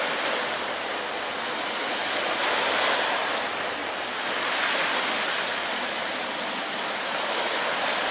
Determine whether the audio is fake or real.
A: real